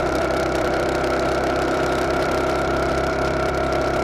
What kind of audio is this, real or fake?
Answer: fake